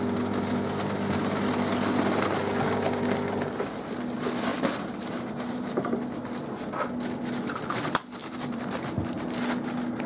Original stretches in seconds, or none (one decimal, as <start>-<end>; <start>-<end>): 0.0-4.5; 6.2-8.2; 8.9-10.1